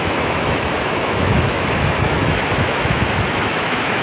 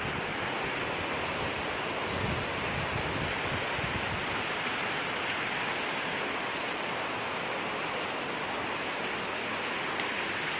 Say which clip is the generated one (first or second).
first